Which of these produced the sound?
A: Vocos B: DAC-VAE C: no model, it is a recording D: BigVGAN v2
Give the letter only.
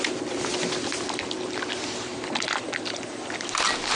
C